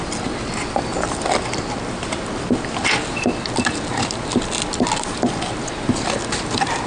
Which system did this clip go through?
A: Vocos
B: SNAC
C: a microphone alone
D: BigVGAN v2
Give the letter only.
C